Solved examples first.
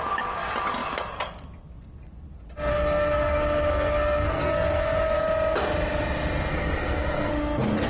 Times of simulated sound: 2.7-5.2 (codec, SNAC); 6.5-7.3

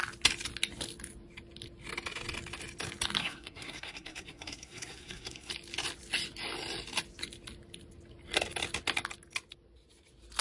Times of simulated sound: 3.2-5.5 (codec, SNAC)